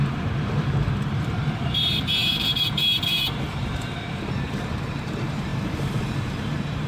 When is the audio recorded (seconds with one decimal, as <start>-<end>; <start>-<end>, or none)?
none